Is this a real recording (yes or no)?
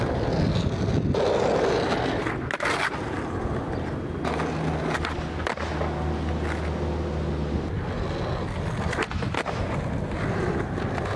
yes